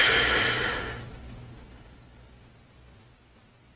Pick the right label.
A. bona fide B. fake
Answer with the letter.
A